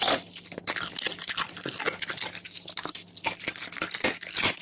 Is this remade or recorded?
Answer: recorded